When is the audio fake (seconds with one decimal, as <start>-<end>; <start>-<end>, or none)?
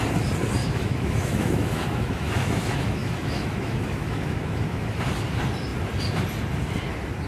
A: 0.6-5.0